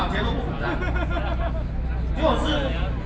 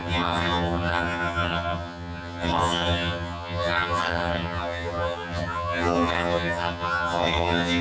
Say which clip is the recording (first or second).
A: first